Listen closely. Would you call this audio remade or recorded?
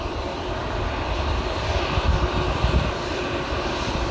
remade